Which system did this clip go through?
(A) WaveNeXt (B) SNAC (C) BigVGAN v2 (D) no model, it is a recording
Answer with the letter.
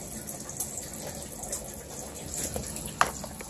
D